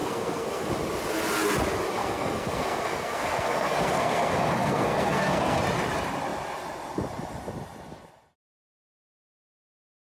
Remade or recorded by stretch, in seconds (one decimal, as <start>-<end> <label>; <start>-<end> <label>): 0.0-0.7 remade; 0.7-2.0 recorded; 2.0-5.6 remade; 5.6-10.1 recorded